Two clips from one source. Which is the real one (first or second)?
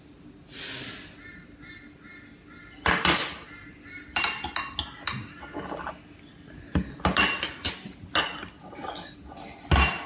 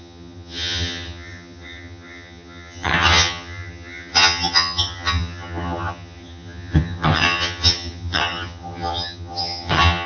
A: first